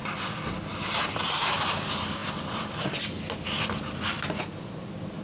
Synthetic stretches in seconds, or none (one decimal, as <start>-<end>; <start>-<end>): none